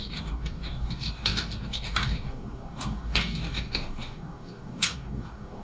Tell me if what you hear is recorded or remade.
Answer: remade